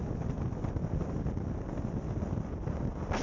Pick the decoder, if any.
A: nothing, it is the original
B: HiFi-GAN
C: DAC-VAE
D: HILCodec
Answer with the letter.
A